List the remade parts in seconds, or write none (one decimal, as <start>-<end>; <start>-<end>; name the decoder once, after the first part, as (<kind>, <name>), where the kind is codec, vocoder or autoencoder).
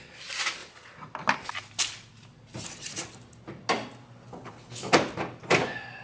4.3-4.9 (codec, HILCodec)